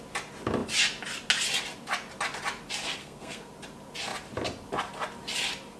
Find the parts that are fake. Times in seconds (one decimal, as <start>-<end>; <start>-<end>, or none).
3.0-3.5